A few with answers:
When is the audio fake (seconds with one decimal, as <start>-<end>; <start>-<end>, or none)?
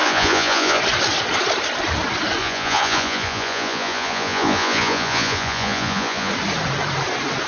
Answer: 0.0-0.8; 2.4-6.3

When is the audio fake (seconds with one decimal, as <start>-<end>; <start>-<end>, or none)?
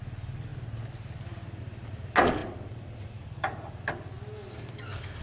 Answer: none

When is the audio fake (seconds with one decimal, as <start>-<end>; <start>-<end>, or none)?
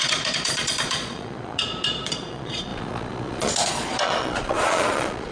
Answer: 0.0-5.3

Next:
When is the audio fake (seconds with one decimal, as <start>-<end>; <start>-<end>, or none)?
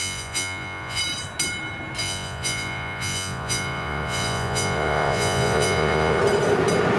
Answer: 0.0-1.0; 2.0-6.2